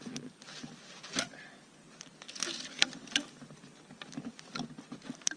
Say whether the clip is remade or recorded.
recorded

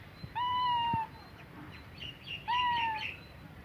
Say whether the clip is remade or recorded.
remade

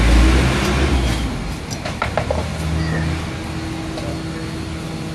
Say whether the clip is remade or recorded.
recorded